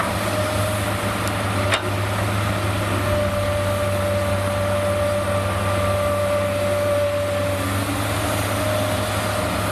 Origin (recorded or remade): recorded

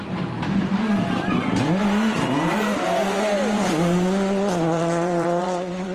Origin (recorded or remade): remade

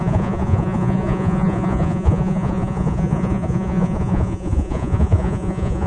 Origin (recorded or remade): remade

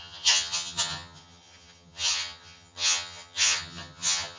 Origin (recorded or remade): remade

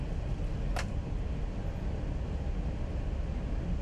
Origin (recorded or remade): recorded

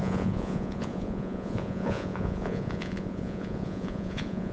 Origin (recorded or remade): remade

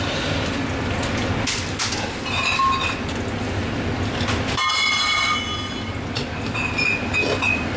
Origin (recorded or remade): recorded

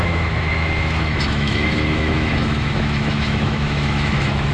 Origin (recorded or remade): remade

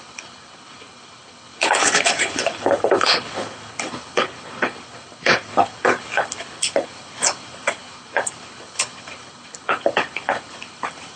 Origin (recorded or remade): remade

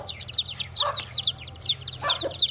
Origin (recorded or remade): remade